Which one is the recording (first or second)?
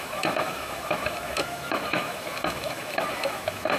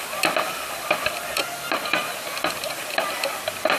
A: second